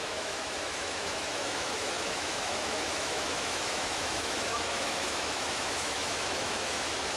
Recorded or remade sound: remade